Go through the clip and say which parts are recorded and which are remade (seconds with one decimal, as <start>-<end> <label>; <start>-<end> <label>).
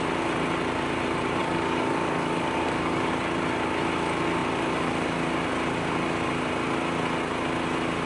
0.0-1.4 recorded; 1.4-3.1 remade; 3.1-8.1 recorded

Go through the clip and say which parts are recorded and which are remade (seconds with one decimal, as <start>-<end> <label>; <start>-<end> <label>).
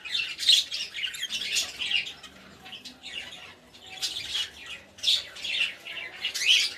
0.0-6.8 recorded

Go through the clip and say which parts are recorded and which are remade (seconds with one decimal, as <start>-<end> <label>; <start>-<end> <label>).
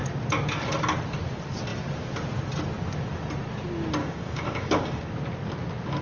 0.0-4.0 recorded; 4.0-5.1 remade; 5.1-6.0 recorded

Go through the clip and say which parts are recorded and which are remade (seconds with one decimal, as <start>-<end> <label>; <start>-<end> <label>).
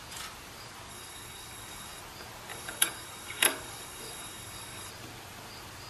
0.0-0.9 recorded; 0.9-2.0 remade; 2.0-2.5 recorded; 2.5-4.9 remade; 4.9-5.9 recorded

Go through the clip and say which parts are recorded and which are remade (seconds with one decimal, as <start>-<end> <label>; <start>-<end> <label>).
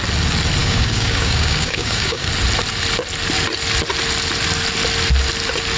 0.0-0.6 recorded; 0.6-2.3 remade; 2.3-5.8 recorded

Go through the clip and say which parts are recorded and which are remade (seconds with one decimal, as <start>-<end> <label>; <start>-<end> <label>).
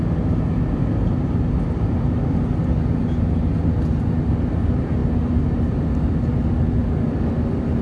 0.0-6.8 recorded; 6.8-7.3 remade; 7.3-7.8 recorded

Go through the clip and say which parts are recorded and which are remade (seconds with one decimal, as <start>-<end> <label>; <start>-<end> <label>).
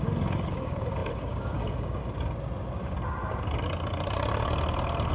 0.0-2.0 remade; 2.0-5.1 recorded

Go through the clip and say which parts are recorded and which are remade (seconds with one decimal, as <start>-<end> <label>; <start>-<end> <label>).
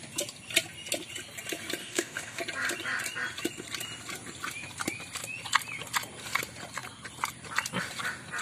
0.0-1.8 recorded; 1.8-2.4 remade; 2.4-8.4 recorded